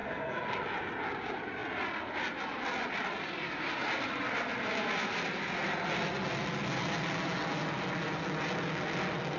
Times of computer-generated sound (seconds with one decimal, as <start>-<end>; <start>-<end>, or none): 0.0-0.5